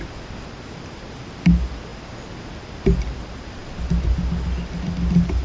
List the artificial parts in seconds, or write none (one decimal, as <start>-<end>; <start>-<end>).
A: none